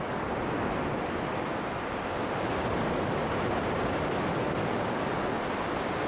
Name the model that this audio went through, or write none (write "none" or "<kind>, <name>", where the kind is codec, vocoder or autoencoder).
none